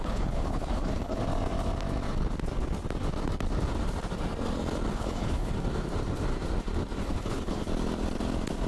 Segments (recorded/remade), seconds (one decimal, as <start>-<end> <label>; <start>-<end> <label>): 0.0-1.2 remade; 1.2-4.9 recorded; 4.9-5.5 remade; 5.5-7.0 recorded; 7.0-7.6 remade; 7.6-8.7 recorded